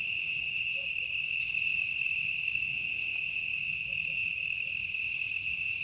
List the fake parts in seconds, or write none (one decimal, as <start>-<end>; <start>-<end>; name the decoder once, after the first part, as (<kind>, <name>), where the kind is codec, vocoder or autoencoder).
1.7-2.8 (vocoder, BigVGAN v2)